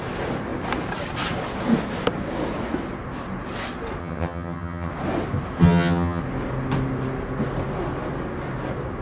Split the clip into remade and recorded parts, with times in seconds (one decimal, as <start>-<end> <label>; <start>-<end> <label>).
0.0-4.0 recorded; 4.0-4.9 remade; 4.9-5.6 recorded; 5.6-6.2 remade; 6.2-9.0 recorded